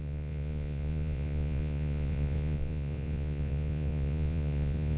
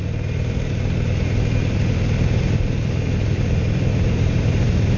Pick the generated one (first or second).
first